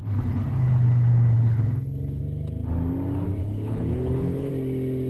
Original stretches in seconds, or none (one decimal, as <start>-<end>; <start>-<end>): 2.2-3.4; 4.5-5.1